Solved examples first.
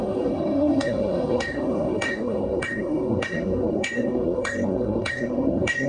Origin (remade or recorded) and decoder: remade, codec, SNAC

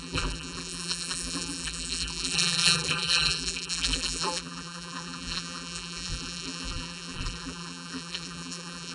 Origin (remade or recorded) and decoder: remade, vocoder, BigVGAN v2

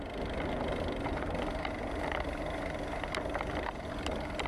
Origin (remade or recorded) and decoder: recorded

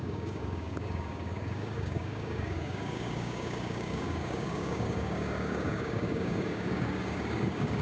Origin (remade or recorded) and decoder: remade, codec, DAC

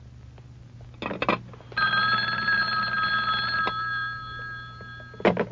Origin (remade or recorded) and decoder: recorded